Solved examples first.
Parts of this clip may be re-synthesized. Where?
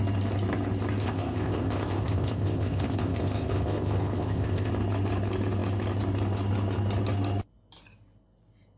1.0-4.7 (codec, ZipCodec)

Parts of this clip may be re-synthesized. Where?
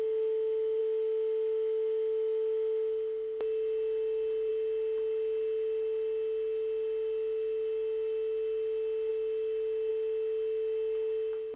none